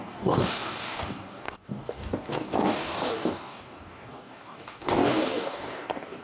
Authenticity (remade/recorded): remade